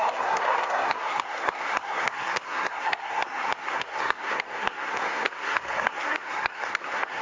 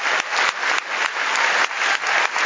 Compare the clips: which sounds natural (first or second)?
second